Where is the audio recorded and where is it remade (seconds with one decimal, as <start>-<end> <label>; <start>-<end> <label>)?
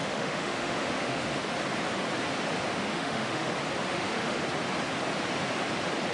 0.0-1.5 remade; 1.5-2.7 recorded; 2.7-3.5 remade; 3.5-3.9 recorded; 3.9-4.4 remade; 4.4-6.1 recorded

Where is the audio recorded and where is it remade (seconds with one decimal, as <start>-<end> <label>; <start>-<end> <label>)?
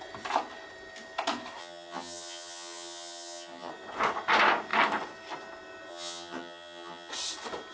0.0-1.6 recorded; 1.6-3.7 remade; 3.7-5.9 recorded; 5.9-7.1 remade; 7.1-7.7 recorded